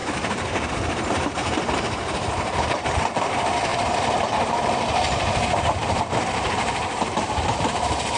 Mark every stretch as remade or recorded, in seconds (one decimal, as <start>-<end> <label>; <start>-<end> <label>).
0.0-0.7 recorded; 0.7-3.7 remade; 3.7-4.4 recorded; 4.4-8.2 remade